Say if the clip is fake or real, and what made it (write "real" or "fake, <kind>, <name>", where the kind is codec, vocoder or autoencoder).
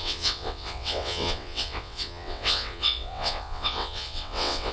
fake, vocoder, WaveNeXt